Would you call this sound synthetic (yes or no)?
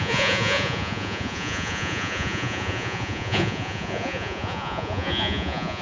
yes